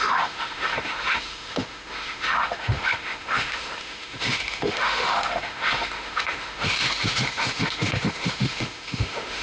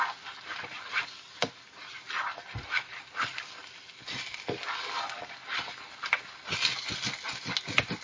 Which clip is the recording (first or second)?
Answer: second